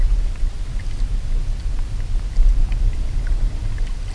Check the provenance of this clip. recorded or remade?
recorded